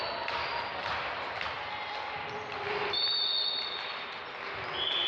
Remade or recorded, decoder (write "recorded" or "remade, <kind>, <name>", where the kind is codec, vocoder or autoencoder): recorded